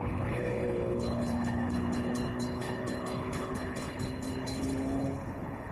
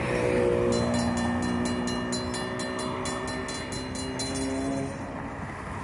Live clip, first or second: second